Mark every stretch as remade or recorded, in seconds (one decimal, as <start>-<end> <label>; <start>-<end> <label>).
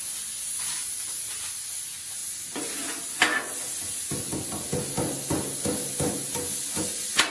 0.0-7.3 recorded